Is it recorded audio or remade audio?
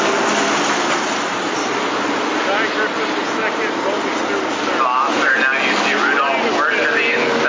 recorded